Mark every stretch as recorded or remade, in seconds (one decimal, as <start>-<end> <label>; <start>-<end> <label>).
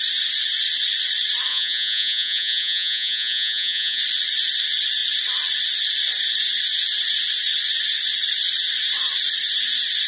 0.0-1.5 recorded; 1.5-4.0 remade; 4.0-10.1 recorded